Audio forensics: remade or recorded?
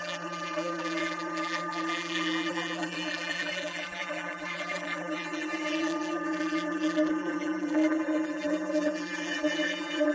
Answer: remade